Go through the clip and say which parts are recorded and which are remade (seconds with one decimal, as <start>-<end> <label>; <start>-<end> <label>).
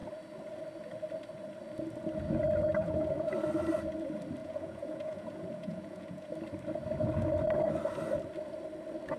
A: 0.0-2.8 recorded; 2.8-3.3 remade; 3.3-4.4 recorded; 4.4-6.3 remade; 6.3-9.2 recorded